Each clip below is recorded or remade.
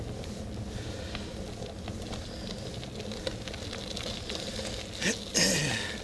recorded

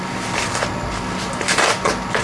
recorded